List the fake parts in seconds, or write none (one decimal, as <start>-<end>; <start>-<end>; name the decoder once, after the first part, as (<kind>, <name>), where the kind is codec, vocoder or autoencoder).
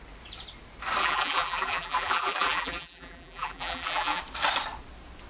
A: 1.0-4.2 (vocoder, BigVGAN v2)